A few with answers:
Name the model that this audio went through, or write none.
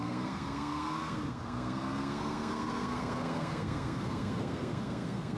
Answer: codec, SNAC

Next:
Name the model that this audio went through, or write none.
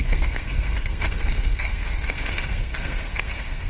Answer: codec, SNAC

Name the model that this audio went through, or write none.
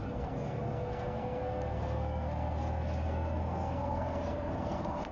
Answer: codec, SNAC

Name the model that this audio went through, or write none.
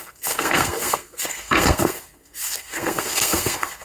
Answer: codec, SNAC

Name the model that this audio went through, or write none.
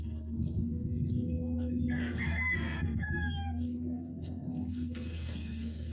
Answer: codec, SNAC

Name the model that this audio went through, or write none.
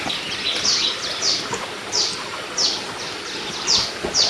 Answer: none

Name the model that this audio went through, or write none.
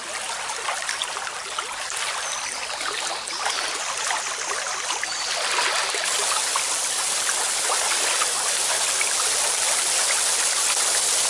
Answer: none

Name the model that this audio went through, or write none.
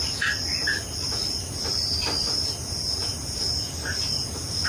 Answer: none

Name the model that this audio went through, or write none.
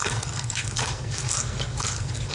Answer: codec, SNAC